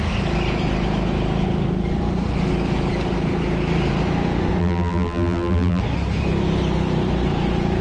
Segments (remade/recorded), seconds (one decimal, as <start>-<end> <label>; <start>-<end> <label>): 0.0-4.6 recorded; 4.6-5.8 remade; 5.8-7.8 recorded